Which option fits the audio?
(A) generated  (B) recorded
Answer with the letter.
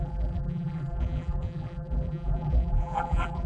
A